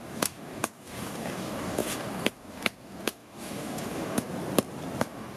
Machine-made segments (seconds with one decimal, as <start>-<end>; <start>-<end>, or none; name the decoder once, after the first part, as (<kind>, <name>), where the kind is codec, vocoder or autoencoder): 0.0-4.3 (codec, DAC); 5.0-5.4